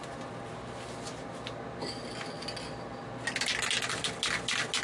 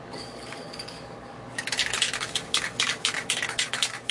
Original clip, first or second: first